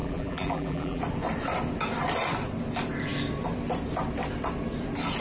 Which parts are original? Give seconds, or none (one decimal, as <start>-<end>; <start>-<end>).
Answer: 1.0-5.2